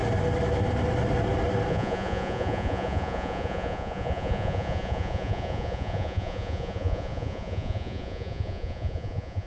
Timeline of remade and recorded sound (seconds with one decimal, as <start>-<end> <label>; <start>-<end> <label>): 0.0-1.7 recorded; 1.7-9.5 remade